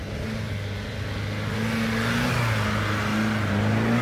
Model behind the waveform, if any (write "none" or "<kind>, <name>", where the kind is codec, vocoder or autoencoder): none